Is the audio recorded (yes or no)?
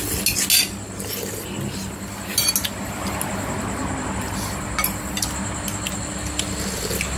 yes